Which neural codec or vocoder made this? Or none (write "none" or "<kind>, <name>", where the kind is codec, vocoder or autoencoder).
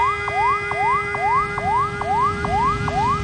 none